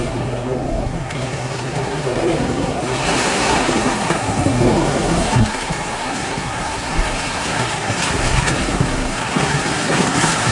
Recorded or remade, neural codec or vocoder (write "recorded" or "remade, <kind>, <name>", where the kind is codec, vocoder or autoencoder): remade, codec, SNAC